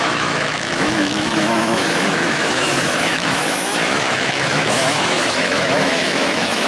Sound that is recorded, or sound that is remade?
remade